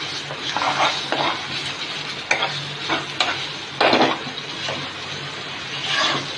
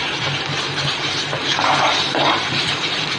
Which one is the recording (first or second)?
first